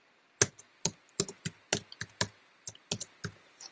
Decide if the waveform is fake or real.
real